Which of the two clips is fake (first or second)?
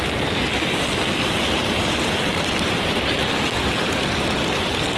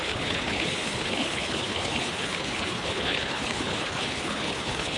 second